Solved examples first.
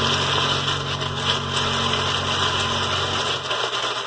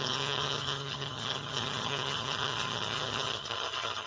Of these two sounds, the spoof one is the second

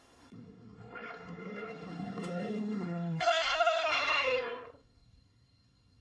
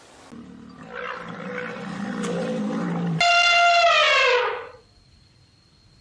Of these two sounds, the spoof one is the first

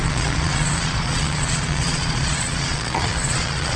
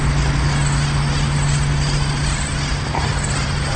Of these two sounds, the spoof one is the first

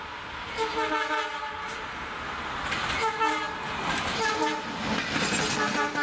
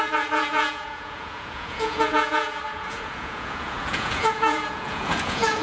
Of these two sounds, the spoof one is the second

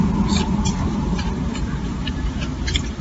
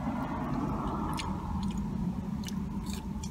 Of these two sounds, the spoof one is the first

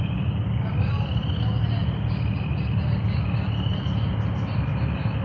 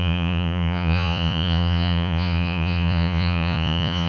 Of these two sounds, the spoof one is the second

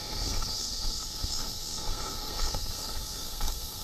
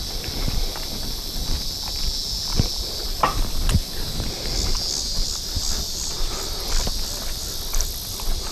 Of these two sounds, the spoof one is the first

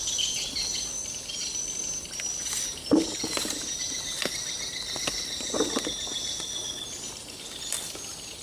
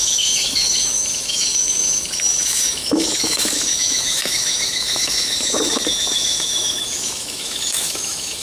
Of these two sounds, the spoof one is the second